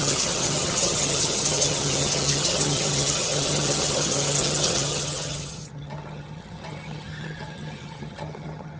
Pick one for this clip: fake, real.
fake